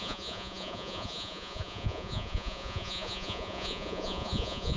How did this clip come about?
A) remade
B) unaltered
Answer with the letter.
A